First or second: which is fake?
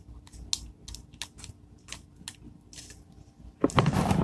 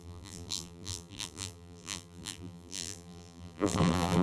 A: second